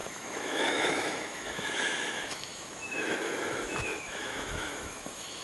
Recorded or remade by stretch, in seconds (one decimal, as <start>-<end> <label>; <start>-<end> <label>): 0.0-5.4 remade